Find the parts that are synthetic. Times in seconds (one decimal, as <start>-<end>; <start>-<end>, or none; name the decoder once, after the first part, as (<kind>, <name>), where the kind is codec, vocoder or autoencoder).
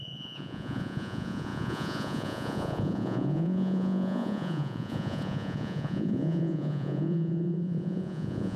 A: 0.0-8.6 (vocoder, Vocos)